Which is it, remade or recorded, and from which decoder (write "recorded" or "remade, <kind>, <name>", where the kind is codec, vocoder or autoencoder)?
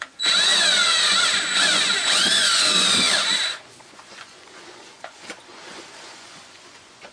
remade, vocoder, Vocos